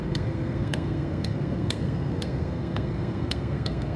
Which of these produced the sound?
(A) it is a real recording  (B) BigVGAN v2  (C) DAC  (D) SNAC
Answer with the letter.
D